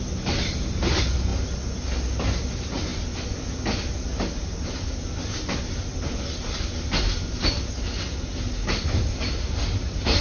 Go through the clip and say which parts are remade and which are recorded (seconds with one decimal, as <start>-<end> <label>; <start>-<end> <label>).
0.0-10.2 recorded